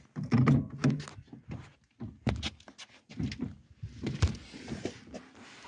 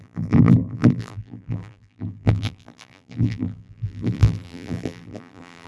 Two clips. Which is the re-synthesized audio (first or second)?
second